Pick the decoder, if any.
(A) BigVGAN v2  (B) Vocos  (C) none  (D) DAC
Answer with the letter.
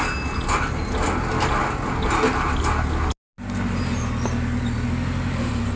C